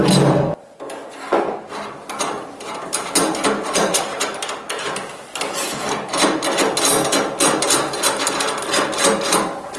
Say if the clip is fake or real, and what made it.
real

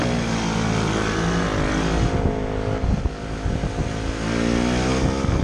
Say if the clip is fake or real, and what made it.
real